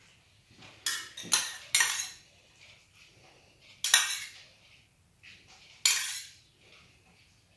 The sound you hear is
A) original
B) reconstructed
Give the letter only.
A